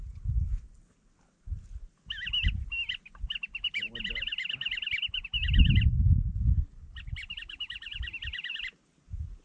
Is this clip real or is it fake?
real